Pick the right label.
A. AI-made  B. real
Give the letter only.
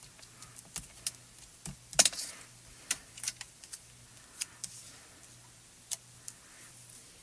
B